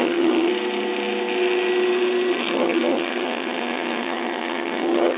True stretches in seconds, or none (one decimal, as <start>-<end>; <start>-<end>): 0.5-2.3